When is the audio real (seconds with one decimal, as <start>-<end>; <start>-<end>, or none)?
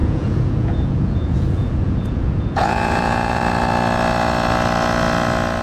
3.4-5.6